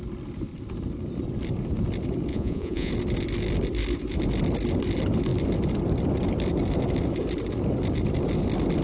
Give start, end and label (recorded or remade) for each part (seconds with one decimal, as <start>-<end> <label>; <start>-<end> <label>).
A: 0.0-2.3 recorded; 2.3-2.9 remade; 2.9-8.8 recorded